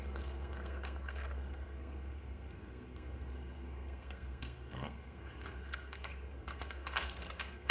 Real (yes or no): no